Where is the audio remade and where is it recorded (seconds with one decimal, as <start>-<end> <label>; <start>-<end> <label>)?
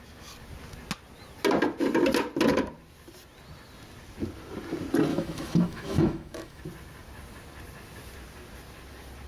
0.0-5.1 recorded; 5.1-6.6 remade; 6.6-9.3 recorded